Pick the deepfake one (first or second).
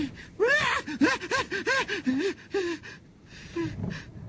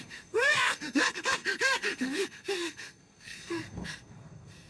second